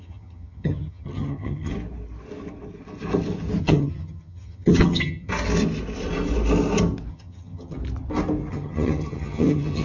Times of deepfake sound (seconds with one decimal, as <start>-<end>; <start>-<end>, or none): 0.0-1.7; 3.6-5.3; 7.1-7.8; 8.5-9.8

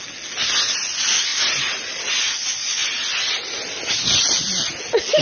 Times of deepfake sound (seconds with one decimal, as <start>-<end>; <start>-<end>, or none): none

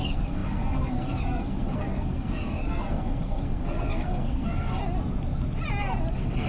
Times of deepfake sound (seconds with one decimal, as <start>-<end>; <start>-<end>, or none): 0.0-4.8; 6.1-6.5